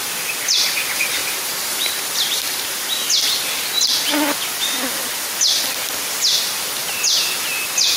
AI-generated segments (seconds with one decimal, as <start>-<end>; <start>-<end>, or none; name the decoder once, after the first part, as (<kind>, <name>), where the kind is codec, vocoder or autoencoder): 1.2-3.0 (vocoder, BigVGAN v2); 6.8-7.3

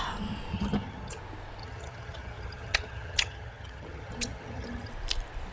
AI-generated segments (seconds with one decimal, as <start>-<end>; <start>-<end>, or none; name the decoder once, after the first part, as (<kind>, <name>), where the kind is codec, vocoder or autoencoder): 0.5-1.2 (vocoder, HiFi-GAN); 1.6-4.9

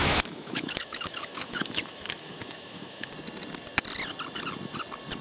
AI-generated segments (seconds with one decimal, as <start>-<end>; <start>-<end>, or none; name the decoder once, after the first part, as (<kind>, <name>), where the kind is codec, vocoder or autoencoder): 0.0-3.1 (autoencoder, DAC-VAE)

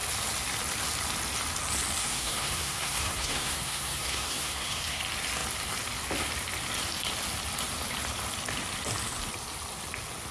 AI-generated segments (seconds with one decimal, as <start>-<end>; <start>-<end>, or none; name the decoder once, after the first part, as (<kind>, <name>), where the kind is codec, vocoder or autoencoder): 2.0-5.0 (codec, SNAC)

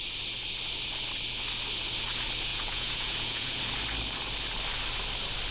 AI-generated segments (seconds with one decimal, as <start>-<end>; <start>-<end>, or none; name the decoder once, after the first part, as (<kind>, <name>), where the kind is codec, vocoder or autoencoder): 2.5-3.6 (vocoder, Vocos)

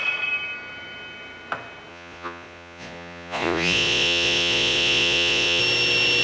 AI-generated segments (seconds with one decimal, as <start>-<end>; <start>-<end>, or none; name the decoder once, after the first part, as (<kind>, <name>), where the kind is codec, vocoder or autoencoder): 1.9-5.6 (vocoder, Vocos)